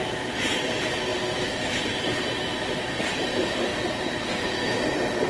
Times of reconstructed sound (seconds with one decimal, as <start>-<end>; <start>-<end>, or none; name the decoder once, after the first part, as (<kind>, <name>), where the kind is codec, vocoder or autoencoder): 3.7-4.4 (vocoder, BigVGAN v2)